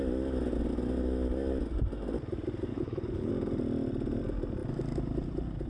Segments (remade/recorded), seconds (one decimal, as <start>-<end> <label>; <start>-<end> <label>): 0.0-2.7 recorded; 2.7-3.3 remade; 3.3-5.7 recorded